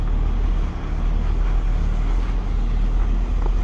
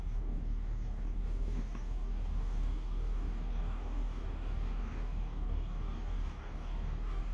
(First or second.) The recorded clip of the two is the first